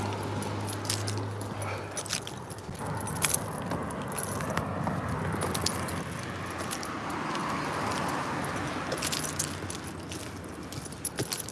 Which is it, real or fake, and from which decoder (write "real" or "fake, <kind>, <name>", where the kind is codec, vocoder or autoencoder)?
real